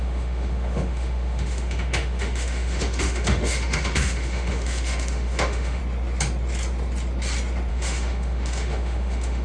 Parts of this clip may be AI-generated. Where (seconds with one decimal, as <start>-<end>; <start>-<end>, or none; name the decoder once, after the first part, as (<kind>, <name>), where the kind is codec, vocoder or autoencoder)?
0.0-5.8 (autoencoder, DAC-VAE); 7.7-9.4